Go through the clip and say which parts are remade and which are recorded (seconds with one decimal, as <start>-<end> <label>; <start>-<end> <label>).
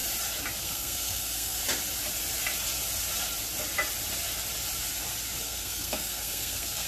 0.0-0.6 recorded; 0.6-1.6 remade; 1.6-5.4 recorded; 5.4-6.9 remade